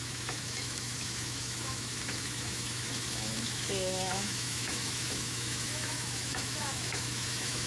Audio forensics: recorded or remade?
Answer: remade